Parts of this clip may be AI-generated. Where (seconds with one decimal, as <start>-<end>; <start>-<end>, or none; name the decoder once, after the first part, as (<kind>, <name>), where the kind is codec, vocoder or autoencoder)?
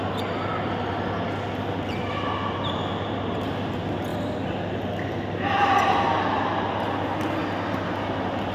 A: none